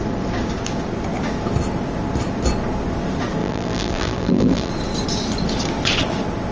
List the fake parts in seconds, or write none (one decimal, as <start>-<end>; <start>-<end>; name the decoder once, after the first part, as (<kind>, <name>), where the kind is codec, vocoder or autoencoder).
3.4-4.7 (vocoder, BigVGAN v2)